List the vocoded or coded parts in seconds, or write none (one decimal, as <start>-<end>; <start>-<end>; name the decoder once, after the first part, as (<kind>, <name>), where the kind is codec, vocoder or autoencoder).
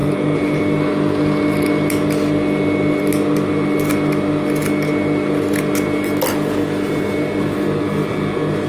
0.0-0.6 (vocoder, BigVGAN v2)